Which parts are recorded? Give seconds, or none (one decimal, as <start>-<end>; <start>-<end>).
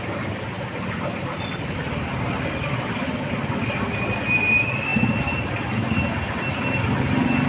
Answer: 0.0-7.5